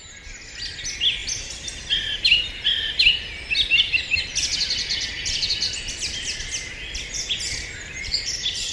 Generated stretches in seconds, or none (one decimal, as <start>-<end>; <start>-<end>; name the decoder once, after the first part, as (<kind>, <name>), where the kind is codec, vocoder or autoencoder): none